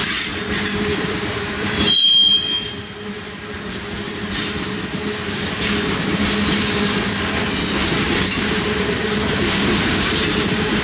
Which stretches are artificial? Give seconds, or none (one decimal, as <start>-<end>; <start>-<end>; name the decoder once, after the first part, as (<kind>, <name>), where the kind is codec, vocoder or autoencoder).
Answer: 0.9-1.8 (vocoder, BigVGAN v2); 7.8-10.8